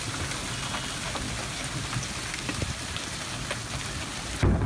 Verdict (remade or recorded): recorded